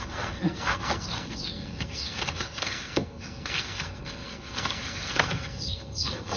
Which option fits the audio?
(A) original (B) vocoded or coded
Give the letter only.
B